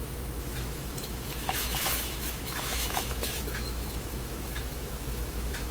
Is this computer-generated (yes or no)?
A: yes